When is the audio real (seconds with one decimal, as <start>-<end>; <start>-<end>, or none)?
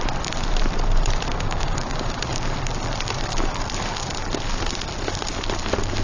0.0-1.3; 2.2-6.0